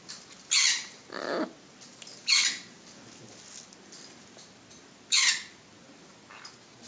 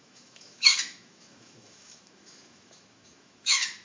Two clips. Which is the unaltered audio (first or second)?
first